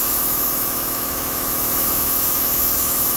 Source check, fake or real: fake